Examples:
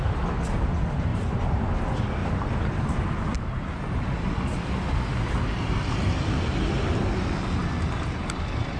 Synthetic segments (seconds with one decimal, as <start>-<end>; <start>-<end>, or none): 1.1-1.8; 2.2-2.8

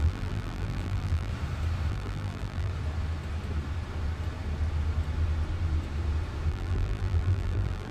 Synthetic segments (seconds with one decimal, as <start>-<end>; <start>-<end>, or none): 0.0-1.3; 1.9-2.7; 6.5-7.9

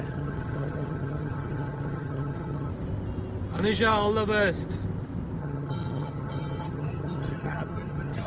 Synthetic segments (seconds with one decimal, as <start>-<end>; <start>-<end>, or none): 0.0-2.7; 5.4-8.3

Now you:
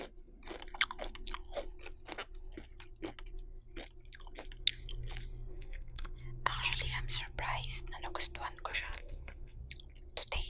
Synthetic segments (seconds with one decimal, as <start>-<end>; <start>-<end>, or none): 5.5-6.5; 8.7-9.6

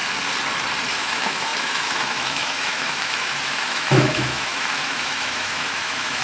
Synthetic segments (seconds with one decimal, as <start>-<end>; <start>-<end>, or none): 0.9-6.2

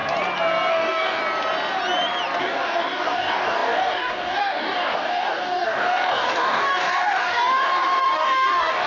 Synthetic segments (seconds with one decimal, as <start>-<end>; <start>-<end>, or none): 0.7-1.2; 2.4-8.9

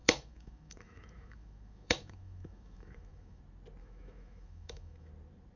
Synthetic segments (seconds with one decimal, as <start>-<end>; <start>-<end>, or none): 0.0-3.4; 3.8-5.1

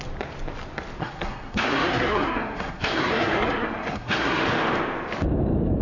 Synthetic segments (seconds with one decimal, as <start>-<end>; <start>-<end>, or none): 1.0-4.4